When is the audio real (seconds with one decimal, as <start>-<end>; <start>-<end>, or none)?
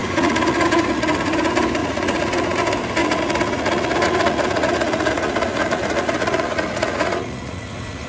1.3-1.8; 2.6-3.0